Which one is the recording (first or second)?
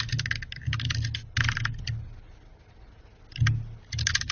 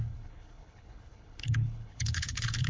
first